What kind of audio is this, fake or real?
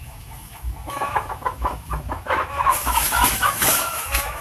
fake